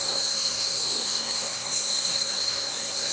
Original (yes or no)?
no